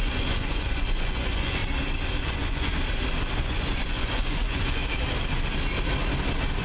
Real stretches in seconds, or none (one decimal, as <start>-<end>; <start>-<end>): 1.6-2.2; 2.7-3.4; 4.8-6.6